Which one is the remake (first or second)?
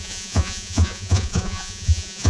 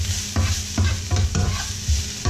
first